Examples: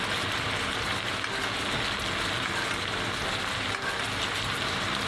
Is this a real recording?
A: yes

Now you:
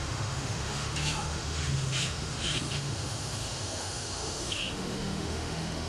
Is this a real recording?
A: no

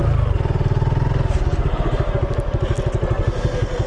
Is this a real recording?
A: yes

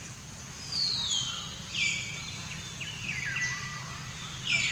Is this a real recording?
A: yes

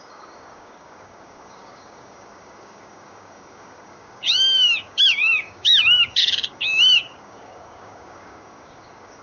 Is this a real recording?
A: no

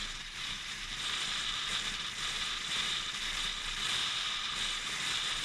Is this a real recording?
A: no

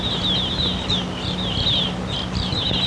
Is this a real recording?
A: yes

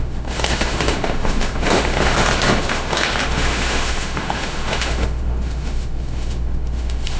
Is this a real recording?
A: no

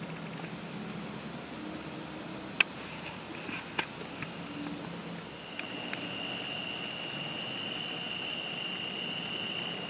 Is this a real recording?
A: yes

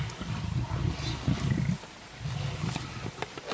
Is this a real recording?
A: yes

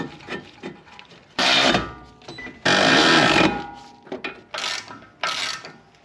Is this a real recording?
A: yes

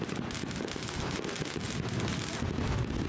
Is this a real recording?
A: yes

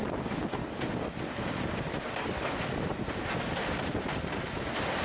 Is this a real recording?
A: yes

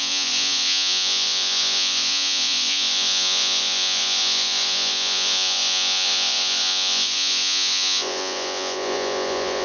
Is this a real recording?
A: no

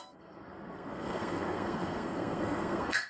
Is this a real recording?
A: no